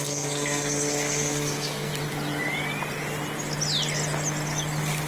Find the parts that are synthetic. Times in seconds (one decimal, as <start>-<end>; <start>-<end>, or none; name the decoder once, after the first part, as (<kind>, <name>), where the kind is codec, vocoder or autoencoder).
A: 0.0-1.9 (codec, SNAC)